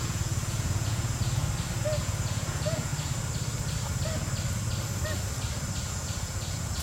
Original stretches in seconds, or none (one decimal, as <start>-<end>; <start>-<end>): 1.4-2.0; 2.9-5.8